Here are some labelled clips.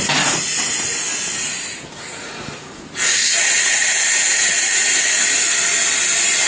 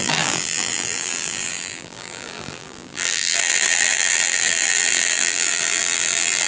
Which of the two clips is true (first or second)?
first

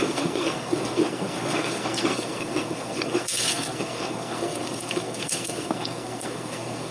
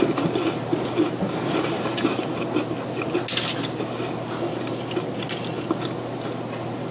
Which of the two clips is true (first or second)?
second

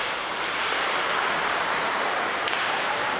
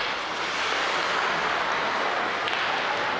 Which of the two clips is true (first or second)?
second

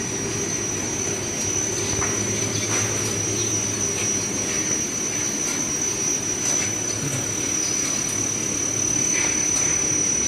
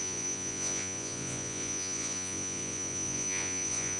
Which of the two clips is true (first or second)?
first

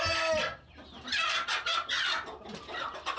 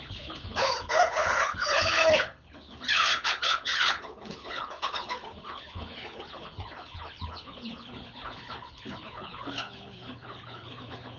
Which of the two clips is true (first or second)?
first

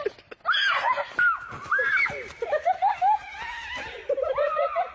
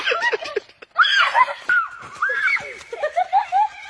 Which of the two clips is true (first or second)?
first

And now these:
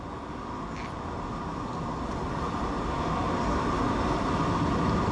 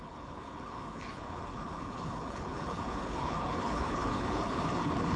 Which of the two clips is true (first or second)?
first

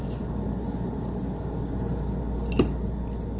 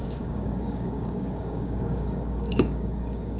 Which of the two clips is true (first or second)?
first